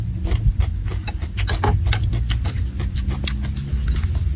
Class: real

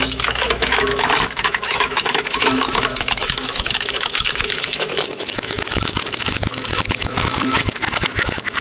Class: fake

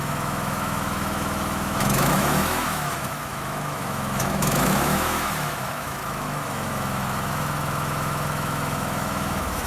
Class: fake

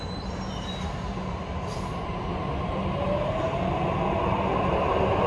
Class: real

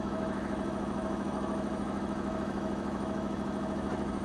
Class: fake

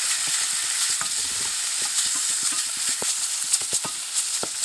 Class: real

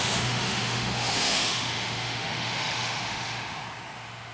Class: fake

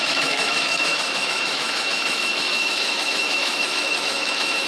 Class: fake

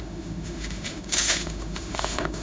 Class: fake